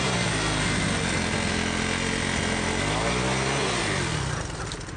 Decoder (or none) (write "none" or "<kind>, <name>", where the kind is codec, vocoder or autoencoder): none